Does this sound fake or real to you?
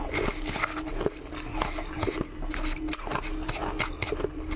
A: real